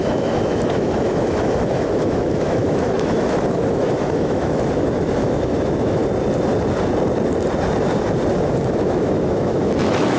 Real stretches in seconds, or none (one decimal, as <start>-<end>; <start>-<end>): 6.0-8.3